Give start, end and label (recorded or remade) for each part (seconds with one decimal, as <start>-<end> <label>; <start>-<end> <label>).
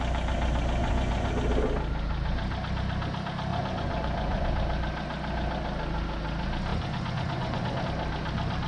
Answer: 0.0-0.8 recorded; 0.8-1.3 remade; 1.3-3.5 recorded; 3.5-4.5 remade; 4.5-6.7 recorded; 6.7-7.8 remade; 7.8-8.7 recorded